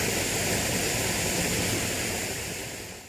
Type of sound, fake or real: real